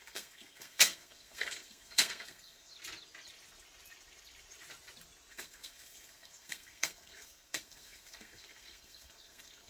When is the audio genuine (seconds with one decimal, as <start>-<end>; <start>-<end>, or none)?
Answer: 2.7-5.3